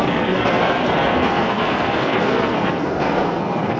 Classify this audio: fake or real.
fake